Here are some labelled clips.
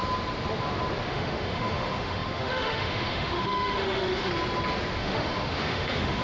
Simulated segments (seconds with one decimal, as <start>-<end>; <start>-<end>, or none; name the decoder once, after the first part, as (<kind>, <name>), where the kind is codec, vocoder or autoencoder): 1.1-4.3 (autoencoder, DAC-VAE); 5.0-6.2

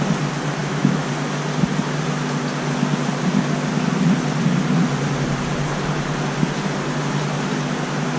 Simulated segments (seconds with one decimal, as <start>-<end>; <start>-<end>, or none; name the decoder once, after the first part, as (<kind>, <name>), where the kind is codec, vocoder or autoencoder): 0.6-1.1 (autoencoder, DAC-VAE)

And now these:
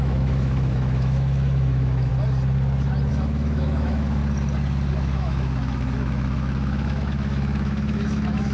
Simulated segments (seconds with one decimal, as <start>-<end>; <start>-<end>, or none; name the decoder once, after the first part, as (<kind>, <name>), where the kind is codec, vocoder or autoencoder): 0.0-2.1 (autoencoder, DAC-VAE); 3.1-4.2; 4.9-8.5

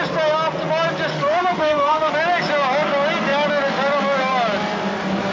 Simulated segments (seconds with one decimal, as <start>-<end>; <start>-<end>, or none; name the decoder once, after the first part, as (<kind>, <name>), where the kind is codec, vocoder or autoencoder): 1.1-2.1 (autoencoder, DAC-VAE)

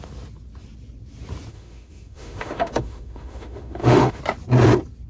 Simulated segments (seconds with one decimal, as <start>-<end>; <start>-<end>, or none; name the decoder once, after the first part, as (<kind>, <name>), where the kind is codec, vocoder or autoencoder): 1.5-4.2 (autoencoder, DAC-VAE)